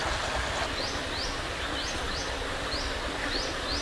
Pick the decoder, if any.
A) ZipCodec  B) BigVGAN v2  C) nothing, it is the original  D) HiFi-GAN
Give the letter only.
C